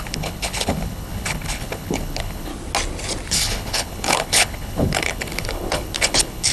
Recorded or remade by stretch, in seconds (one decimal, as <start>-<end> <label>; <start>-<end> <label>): 0.0-2.5 remade; 2.5-3.3 recorded; 3.3-6.5 remade